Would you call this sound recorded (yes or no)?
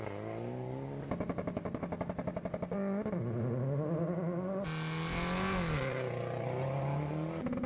yes